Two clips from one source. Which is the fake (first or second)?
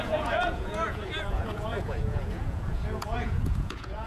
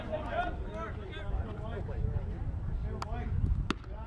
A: first